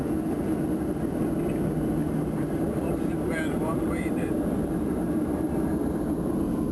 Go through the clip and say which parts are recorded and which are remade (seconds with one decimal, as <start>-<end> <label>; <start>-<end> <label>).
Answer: 0.0-2.0 recorded; 2.0-5.3 remade; 5.3-6.7 recorded